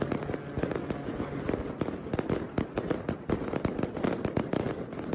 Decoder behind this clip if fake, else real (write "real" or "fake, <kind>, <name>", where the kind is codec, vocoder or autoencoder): real